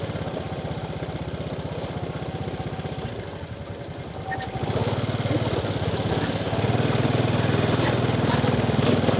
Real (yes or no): yes